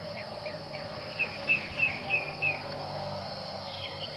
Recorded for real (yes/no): no